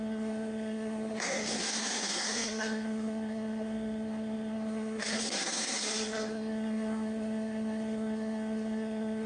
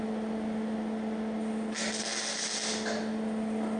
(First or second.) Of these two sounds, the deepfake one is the first